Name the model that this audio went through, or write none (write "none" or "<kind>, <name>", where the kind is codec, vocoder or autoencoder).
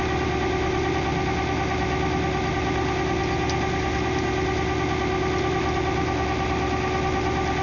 none